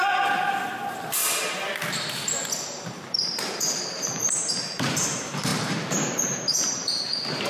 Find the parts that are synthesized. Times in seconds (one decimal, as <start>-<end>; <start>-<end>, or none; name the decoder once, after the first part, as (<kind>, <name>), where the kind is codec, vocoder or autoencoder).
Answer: 0.0-1.2 (vocoder, BigVGAN v2); 2.1-7.5